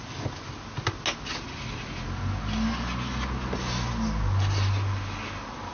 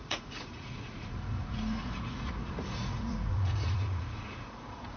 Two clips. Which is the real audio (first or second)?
first